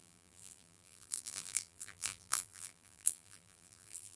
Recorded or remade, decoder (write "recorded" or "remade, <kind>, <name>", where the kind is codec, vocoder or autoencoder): remade, vocoder, BigVGAN v2